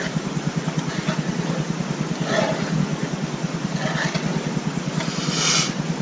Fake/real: real